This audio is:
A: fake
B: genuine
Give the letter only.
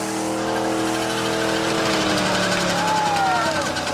B